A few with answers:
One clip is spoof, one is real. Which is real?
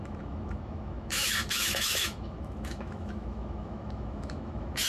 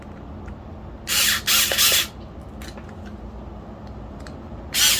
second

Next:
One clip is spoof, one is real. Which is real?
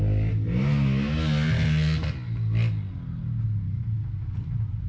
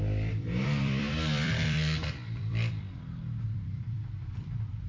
first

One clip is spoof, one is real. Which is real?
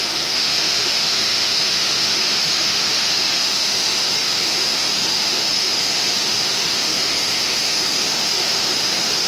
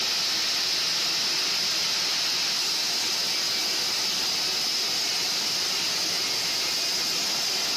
second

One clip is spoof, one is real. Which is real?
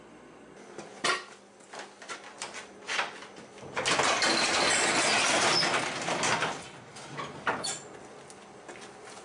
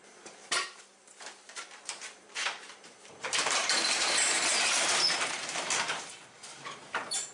first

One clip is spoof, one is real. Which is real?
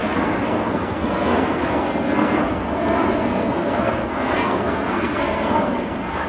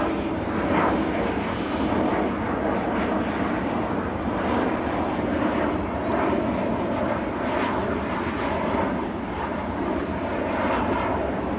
second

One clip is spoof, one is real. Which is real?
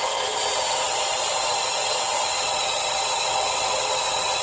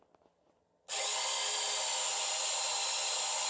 second